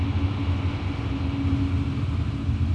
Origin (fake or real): real